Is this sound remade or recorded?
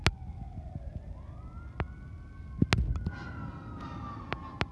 recorded